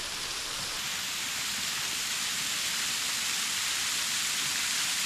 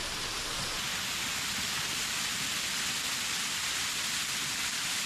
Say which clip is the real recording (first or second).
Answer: second